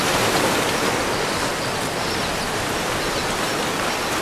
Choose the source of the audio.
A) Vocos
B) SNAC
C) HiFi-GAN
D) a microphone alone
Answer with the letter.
D